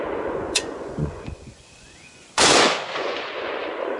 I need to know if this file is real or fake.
fake